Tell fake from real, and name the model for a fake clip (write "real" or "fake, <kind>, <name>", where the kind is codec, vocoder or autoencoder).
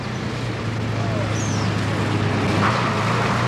real